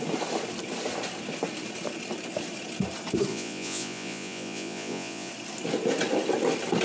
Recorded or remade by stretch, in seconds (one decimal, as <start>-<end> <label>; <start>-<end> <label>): 0.0-3.3 recorded; 3.3-5.3 remade; 5.3-6.8 recorded